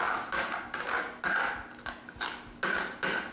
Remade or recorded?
recorded